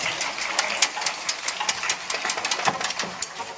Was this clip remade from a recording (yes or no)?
no